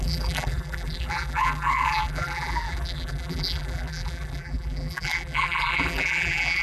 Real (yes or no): no